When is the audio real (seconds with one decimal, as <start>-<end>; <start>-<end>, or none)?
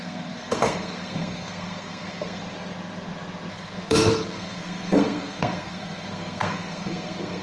2.4-3.5